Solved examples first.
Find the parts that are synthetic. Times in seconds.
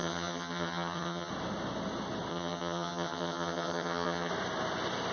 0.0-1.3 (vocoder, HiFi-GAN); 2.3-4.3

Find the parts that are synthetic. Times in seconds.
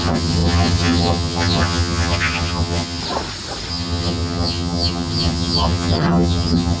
0.0-3.0 (vocoder, HiFi-GAN); 3.7-6.8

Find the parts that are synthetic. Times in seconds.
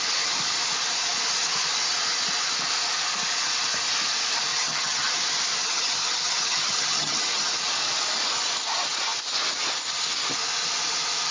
4.5-5.1 (vocoder, HiFi-GAN); 5.6-7.5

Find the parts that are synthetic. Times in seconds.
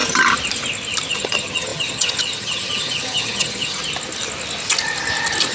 1.1-3.8 (vocoder, HiFi-GAN)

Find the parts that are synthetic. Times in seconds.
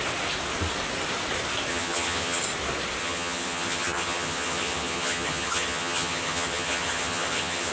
1.7-2.4 (vocoder, HiFi-GAN); 3.0-7.7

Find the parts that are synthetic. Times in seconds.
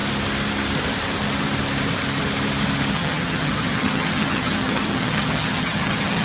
2.9-6.2 (vocoder, HiFi-GAN)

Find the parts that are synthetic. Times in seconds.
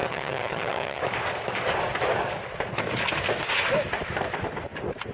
0.0-1.0 (vocoder, HiFi-GAN)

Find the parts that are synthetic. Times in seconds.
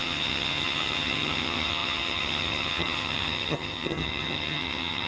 0.0-5.1 (vocoder, HiFi-GAN)